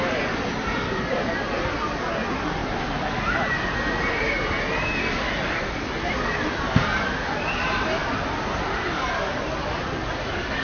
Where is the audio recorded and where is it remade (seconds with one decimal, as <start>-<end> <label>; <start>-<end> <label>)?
0.0-2.6 recorded; 2.6-4.1 remade; 4.1-10.6 recorded